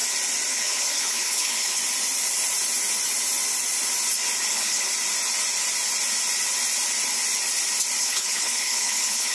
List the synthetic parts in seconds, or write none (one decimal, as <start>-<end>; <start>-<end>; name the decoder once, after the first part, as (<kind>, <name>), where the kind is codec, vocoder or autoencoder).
0.5-1.8 (codec, HILCodec); 4.5-4.9; 8.0-9.3